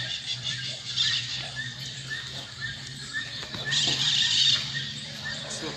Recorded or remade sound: remade